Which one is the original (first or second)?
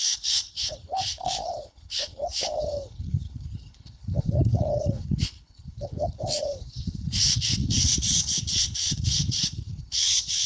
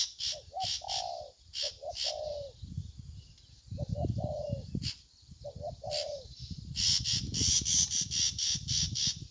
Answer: second